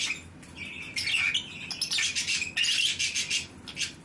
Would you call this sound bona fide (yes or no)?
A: yes